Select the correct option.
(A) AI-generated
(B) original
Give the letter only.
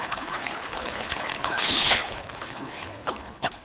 A